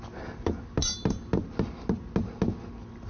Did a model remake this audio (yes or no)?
no